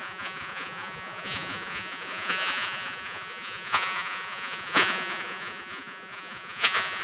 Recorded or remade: remade